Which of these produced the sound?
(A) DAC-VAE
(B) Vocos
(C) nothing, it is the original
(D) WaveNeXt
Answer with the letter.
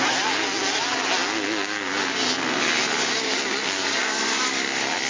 C